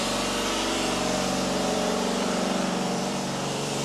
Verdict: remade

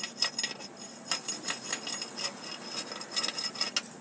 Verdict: recorded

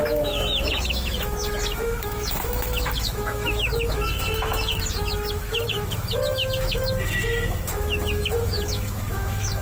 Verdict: remade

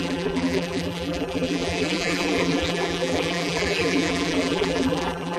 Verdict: remade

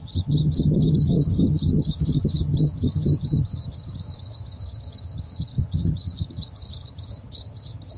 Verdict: remade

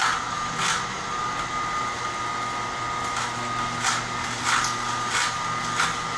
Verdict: recorded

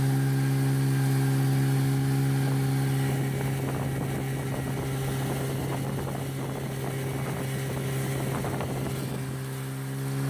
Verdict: recorded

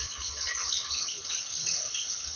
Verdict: remade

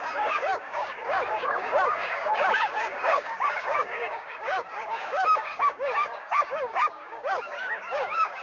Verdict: remade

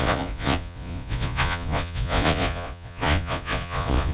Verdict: remade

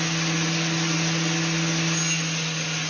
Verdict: recorded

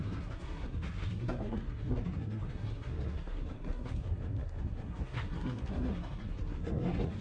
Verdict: remade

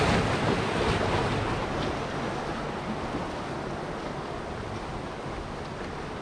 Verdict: recorded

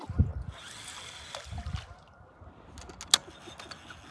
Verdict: recorded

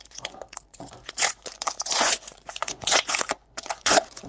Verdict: remade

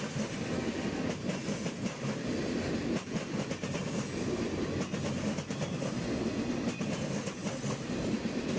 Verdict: recorded